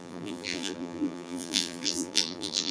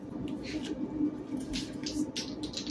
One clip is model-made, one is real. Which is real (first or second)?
second